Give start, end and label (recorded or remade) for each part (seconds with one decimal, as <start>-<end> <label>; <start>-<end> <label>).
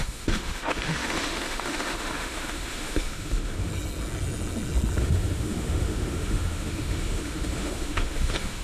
0.0-3.7 remade; 3.7-5.0 recorded; 5.0-8.6 remade